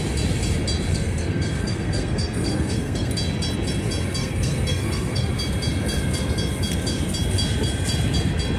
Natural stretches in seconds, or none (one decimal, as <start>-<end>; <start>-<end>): 0.0-0.9; 3.1-4.2; 5.3-8.6